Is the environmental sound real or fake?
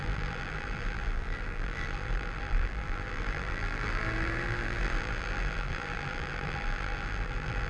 fake